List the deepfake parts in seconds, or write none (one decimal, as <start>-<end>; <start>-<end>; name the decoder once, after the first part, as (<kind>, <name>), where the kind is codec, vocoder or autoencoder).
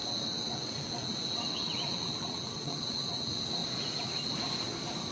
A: 0.0-3.6 (vocoder, WaveNeXt)